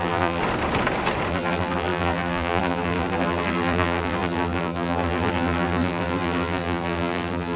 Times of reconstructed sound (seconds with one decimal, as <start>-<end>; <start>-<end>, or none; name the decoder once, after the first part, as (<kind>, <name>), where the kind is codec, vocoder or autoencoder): 0.0-0.4 (vocoder, BigVGAN v2); 1.3-7.6